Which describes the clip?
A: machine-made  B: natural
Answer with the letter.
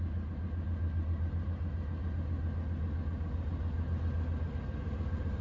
B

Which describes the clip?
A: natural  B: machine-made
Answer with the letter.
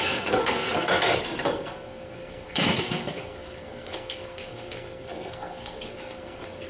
B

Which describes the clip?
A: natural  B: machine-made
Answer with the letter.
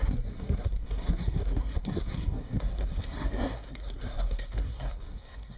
B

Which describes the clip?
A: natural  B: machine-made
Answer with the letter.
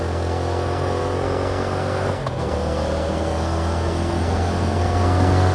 B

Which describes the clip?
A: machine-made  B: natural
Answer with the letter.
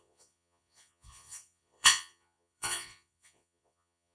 A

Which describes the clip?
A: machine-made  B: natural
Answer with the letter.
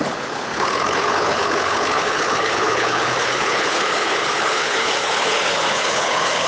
A